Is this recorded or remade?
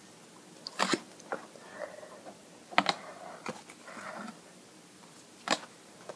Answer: recorded